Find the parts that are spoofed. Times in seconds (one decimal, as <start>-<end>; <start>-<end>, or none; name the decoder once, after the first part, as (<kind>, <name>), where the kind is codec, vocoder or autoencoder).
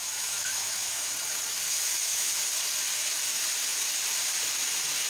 0.0-1.1 (autoencoder, DAC-VAE); 1.7-2.3